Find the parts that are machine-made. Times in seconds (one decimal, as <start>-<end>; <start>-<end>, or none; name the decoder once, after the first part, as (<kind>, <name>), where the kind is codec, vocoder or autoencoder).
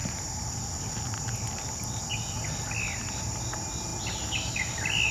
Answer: none